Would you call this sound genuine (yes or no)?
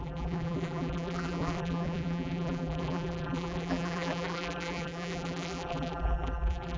no